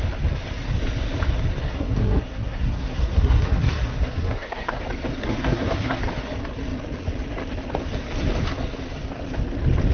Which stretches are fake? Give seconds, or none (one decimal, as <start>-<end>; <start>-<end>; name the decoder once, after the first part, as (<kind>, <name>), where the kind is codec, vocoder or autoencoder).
1.6-4.8 (codec, SNAC); 5.2-6.0